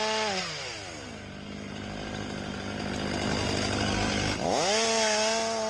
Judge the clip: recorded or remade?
recorded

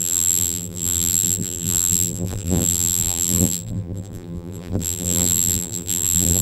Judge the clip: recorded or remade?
remade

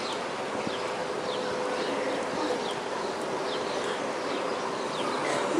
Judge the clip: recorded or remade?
recorded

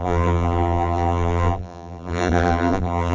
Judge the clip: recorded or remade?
remade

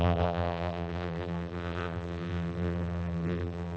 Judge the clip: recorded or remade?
remade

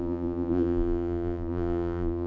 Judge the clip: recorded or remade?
remade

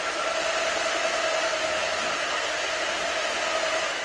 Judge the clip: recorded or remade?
remade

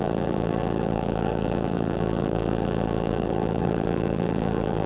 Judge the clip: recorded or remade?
remade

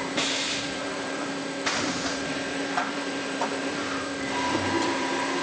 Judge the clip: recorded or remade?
remade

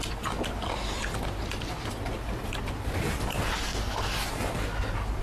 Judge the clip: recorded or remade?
recorded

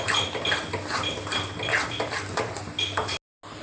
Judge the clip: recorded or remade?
recorded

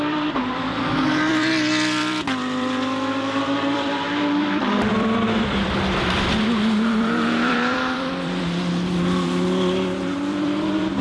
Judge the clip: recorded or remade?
remade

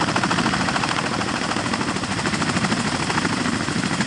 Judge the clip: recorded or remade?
recorded